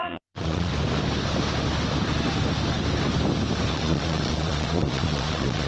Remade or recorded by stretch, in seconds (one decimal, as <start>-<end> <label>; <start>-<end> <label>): 0.0-0.7 remade; 0.7-3.7 recorded; 3.7-5.7 remade